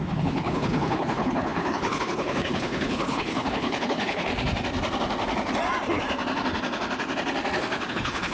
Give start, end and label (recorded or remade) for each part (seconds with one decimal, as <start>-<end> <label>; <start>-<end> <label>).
0.0-4.3 remade; 4.3-7.9 recorded; 7.9-8.3 remade